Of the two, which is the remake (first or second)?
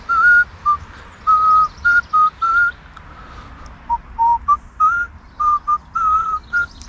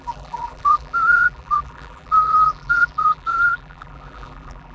second